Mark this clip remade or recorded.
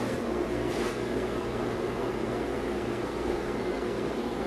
remade